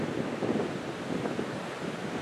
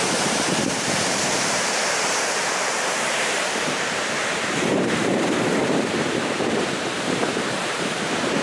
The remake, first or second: second